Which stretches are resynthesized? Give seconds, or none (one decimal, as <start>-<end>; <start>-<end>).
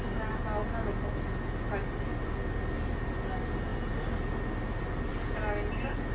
none